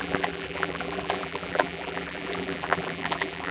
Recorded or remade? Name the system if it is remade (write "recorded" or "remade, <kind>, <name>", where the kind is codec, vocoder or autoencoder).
remade, vocoder, BigVGAN v2